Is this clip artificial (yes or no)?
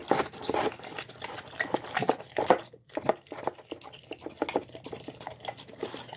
no